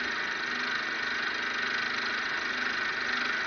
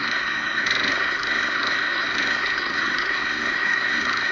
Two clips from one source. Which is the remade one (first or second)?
second